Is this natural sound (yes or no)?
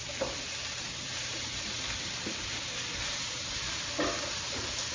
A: yes